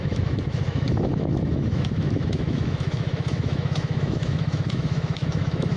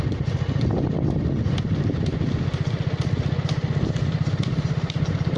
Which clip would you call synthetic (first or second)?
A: first